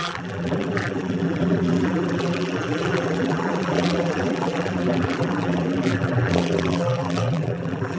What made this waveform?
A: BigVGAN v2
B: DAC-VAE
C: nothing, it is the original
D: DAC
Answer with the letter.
A